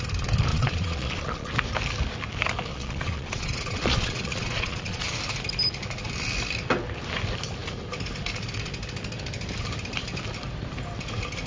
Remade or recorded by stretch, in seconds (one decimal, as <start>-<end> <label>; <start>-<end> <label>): 0.0-0.5 recorded; 0.5-1.5 remade; 1.5-2.7 recorded; 2.7-5.0 remade; 5.0-11.5 recorded